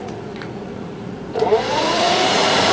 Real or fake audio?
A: fake